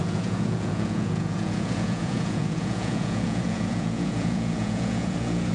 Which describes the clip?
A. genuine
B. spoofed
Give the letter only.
B